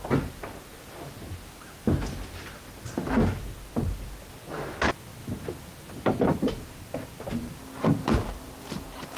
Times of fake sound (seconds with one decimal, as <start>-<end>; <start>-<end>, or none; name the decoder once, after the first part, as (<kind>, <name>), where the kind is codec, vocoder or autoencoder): none